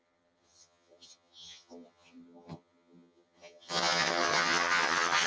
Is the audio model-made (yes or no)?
yes